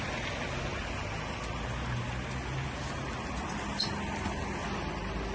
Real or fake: real